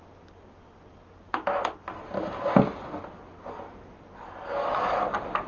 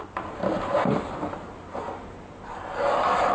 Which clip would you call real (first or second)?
first